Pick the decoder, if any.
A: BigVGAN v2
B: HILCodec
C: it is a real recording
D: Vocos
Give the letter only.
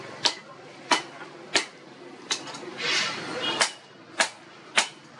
A